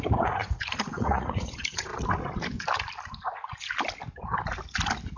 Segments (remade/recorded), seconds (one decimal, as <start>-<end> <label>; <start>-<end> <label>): 0.0-1.9 remade; 1.9-5.2 recorded